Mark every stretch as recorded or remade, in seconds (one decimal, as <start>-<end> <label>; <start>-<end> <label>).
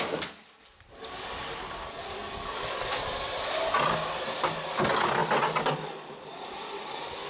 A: 0.0-7.3 recorded